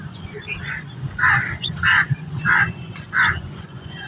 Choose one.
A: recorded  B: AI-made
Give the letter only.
B